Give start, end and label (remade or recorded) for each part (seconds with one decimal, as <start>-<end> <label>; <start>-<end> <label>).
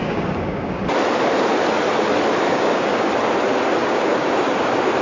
0.0-0.8 remade; 0.8-2.5 recorded; 2.5-3.1 remade; 3.1-3.8 recorded; 3.8-4.5 remade; 4.5-5.0 recorded